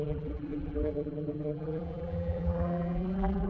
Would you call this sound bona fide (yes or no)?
no